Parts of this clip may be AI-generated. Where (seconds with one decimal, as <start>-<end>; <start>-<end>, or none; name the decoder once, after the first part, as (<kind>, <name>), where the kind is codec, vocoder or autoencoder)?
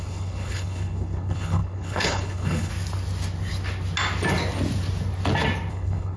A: 0.0-2.7 (codec, HILCodec); 5.7-6.2